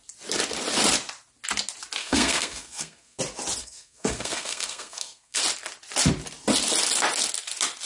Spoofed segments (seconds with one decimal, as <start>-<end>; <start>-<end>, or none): 2.0-3.2; 3.6-5.4